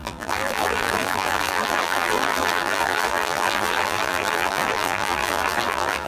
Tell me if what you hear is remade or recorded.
remade